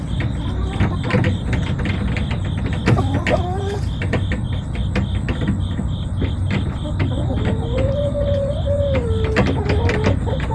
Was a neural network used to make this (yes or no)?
no